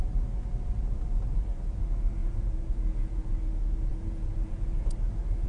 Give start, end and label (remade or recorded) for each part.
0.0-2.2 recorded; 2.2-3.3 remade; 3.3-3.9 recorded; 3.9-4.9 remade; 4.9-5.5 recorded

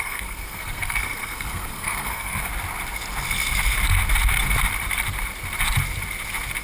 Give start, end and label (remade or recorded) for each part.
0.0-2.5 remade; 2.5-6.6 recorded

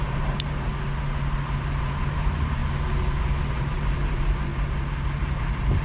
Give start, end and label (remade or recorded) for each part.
0.0-0.7 remade; 0.7-2.1 recorded; 2.1-2.6 remade; 2.6-3.6 recorded; 3.6-4.5 remade; 4.5-5.2 recorded; 5.2-5.8 remade

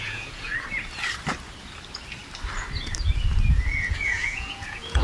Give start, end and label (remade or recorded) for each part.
0.0-0.5 remade; 0.5-3.5 recorded; 3.5-5.0 remade

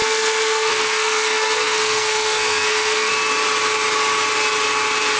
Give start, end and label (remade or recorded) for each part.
0.0-3.1 remade; 3.1-5.2 recorded

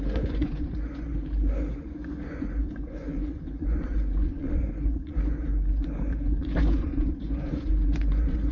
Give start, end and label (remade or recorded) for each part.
0.0-1.1 remade; 1.1-1.7 recorded; 1.7-8.5 remade